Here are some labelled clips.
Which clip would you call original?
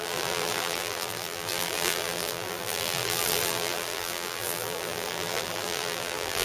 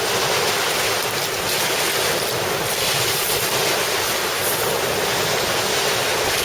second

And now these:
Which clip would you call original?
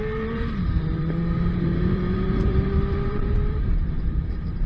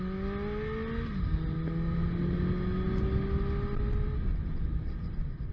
second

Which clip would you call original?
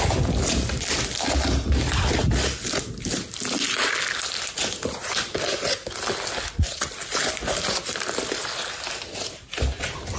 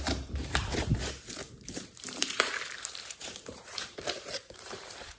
first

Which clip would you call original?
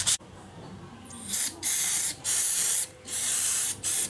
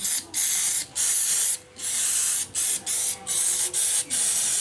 second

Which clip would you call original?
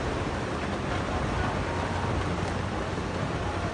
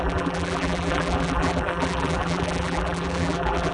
first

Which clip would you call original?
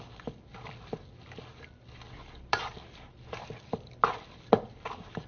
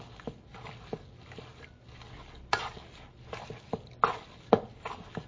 second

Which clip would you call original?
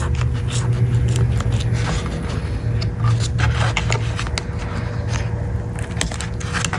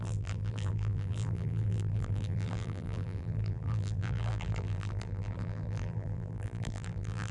first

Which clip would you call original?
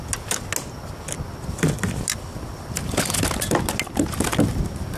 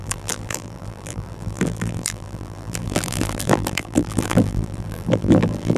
first